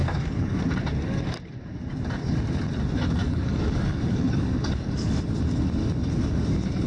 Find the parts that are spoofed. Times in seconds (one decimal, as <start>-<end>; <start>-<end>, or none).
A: 0.0-0.6; 3.2-5.2